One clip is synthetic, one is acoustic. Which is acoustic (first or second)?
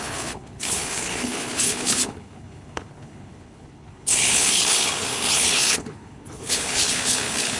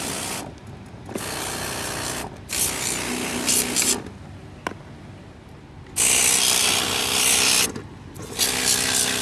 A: second